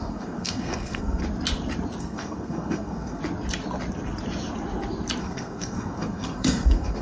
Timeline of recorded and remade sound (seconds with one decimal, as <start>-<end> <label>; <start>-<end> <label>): 0.0-1.2 remade; 1.2-2.0 recorded; 2.0-3.2 remade; 3.2-5.2 recorded; 5.2-7.0 remade